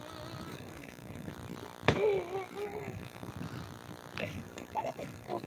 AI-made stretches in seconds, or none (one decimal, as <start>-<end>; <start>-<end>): 0.5-1.3; 2.6-3.3; 4.2-5.5